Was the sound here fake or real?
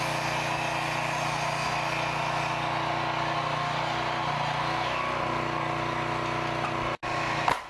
real